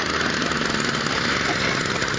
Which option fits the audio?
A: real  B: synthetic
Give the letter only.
A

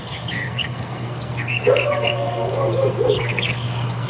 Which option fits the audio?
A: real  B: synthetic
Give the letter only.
B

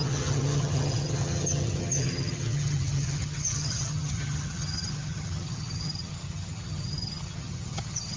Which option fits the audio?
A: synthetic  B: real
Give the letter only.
A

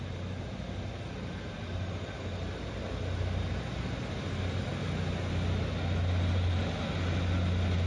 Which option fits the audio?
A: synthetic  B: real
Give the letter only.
B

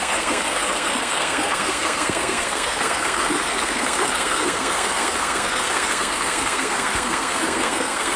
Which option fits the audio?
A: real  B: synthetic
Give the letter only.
B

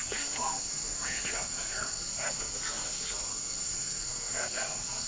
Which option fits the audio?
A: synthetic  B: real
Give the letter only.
A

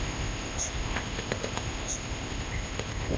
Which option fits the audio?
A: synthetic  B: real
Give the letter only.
A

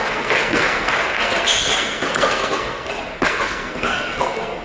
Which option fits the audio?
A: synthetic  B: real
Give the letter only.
A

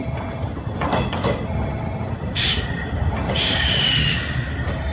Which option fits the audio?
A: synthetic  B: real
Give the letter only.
B